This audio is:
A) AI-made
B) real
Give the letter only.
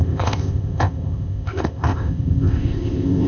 A